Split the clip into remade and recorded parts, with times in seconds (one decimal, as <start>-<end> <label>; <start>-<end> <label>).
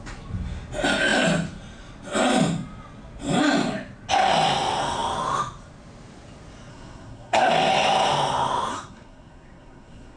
0.0-6.7 recorded; 6.7-7.5 remade; 7.5-8.7 recorded; 8.7-10.2 remade